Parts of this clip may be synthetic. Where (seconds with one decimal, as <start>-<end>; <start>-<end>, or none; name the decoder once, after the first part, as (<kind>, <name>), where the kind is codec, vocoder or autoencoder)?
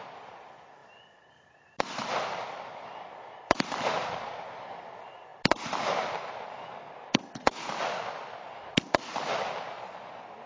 none